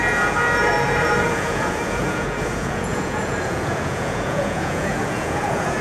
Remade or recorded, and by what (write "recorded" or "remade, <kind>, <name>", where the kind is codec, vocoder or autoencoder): remade, vocoder, Vocos